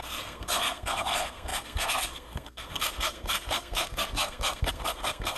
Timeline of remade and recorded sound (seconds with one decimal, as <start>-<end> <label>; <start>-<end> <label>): 0.0-5.4 remade

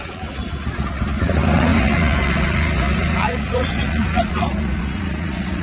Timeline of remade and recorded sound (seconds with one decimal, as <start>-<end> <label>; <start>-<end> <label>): 0.0-5.6 remade

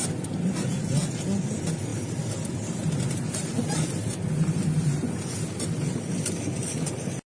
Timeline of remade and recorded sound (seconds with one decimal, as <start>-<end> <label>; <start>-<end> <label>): 0.0-7.3 recorded